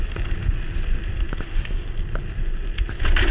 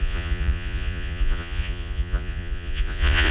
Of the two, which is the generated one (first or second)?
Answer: second